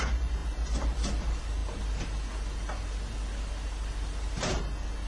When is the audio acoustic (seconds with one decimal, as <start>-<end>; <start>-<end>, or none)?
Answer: 0.0-5.1